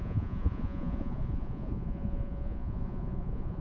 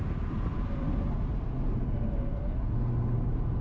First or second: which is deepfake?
first